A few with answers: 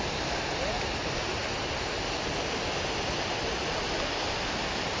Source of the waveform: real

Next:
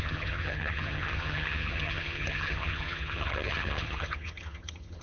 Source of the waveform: fake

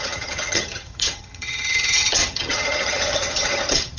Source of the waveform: fake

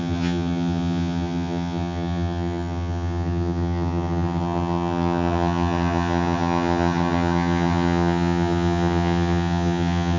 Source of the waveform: fake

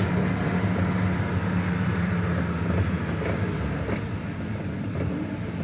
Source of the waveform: real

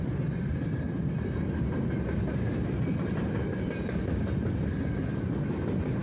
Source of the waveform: real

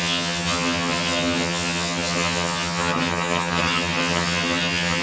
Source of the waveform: fake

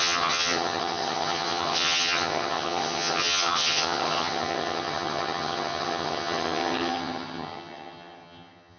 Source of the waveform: fake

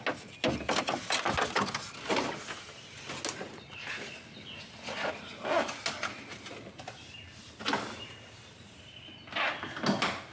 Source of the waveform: real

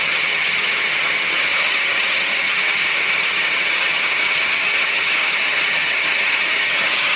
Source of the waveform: fake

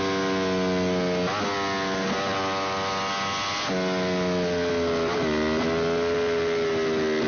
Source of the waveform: real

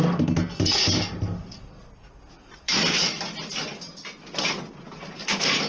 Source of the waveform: real